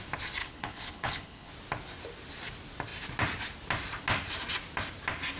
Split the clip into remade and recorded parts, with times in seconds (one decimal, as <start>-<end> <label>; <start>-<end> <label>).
0.0-0.4 recorded; 0.4-1.5 remade; 1.5-5.4 recorded